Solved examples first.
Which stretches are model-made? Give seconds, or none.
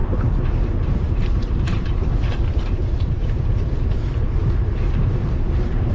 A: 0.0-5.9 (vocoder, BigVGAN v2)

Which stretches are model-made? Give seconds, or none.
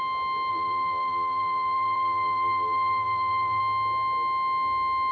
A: 0.5-3.6 (vocoder, BigVGAN v2)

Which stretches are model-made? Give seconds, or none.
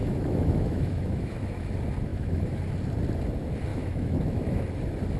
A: 0.0-1.7 (autoencoder, DAC-VAE); 2.1-2.6; 3.7-4.6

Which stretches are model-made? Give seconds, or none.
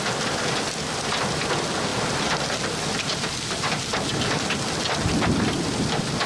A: 0.0-3.9 (vocoder, BigVGAN v2); 5.1-6.3